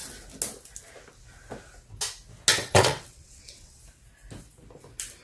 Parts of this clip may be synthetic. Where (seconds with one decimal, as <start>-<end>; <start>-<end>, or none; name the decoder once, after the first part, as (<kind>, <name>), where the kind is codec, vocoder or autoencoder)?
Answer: 2.5-3.8 (vocoder, WaveNeXt)